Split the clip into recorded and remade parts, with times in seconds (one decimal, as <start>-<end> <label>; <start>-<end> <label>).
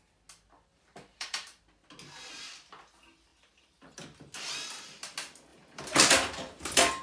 0.0-0.7 recorded; 0.7-1.6 remade; 1.6-5.5 recorded; 5.5-6.6 remade; 6.6-7.0 recorded